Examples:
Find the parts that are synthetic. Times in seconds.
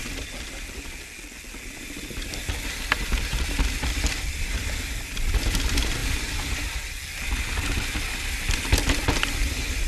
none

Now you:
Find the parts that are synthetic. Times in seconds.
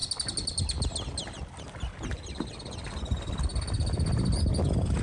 none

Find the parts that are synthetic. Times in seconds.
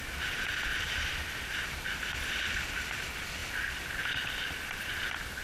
0.7-2.2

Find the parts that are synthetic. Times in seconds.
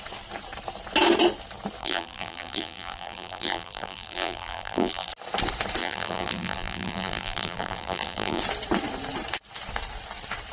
1.8-5.1; 5.8-8.4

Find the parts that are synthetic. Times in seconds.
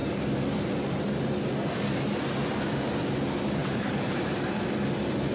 3.6-4.3